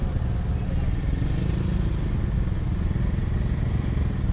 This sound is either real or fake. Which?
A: real